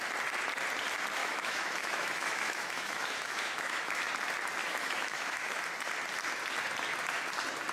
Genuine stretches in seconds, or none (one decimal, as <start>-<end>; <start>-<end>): 0.0-1.2; 4.1-4.6; 5.6-7.7